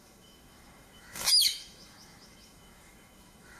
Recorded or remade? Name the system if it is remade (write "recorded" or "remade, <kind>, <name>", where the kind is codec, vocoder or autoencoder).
remade, autoencoder, DAC-VAE